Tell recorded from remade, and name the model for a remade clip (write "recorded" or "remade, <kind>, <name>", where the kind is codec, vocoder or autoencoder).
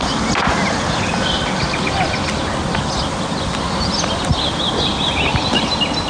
recorded